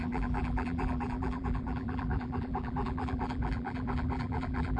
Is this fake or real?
fake